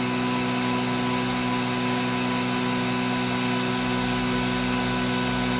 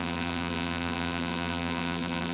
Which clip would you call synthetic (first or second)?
second